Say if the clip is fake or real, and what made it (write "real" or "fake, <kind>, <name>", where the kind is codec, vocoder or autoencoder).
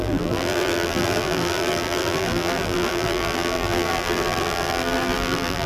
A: fake, vocoder, BigVGAN v2